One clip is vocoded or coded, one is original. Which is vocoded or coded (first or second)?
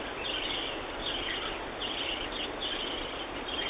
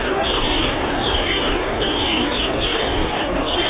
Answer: second